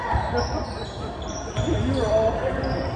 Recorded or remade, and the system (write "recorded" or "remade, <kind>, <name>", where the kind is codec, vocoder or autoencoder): remade, vocoder, BigVGAN v2